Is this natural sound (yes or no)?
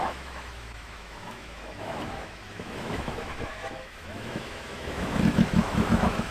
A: no